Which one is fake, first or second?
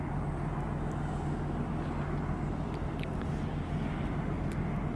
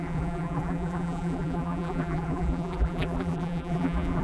second